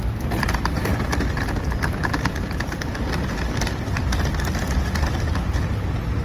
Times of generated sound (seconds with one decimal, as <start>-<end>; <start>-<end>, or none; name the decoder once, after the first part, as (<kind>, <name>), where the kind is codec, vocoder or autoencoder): none